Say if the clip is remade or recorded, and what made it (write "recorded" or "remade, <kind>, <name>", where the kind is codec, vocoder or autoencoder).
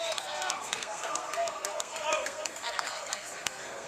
remade, codec, SNAC